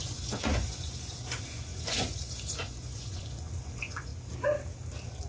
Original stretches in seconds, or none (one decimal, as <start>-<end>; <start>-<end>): 4.1-5.3